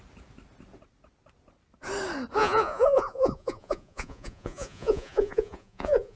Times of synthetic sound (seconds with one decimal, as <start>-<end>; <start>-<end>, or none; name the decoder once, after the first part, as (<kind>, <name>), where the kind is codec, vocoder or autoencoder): 2.4-6.2 (vocoder, Vocos)